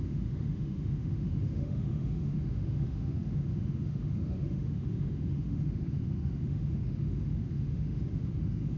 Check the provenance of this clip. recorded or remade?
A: remade